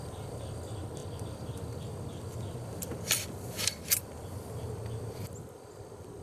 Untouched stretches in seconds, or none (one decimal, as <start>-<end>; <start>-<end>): 0.0-6.2